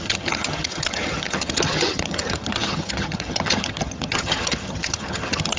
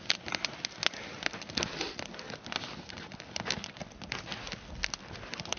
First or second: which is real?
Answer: second